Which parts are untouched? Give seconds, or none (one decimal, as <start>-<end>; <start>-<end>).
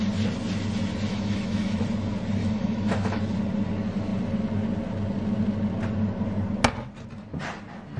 0.0-1.1; 1.8-2.4; 3.2-8.0